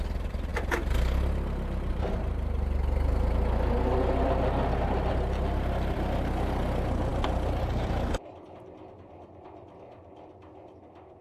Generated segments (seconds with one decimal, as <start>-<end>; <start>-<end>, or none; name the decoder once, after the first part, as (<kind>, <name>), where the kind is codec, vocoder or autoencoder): none